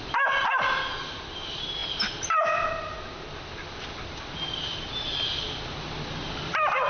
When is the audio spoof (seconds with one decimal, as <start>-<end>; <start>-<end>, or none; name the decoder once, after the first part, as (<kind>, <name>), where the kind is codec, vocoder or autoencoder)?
none